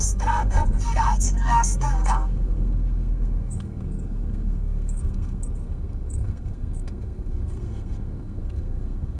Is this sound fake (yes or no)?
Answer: yes